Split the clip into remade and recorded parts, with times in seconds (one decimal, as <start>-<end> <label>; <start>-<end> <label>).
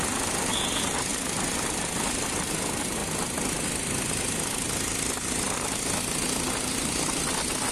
0.0-7.7 recorded